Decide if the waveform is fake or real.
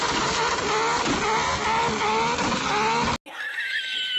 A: real